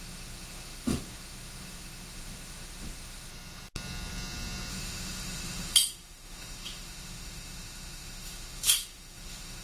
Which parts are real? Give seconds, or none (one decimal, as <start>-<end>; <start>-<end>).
3.3-4.7